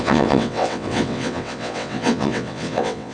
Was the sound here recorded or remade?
remade